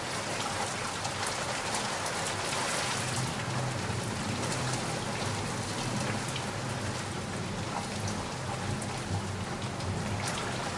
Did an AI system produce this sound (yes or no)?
no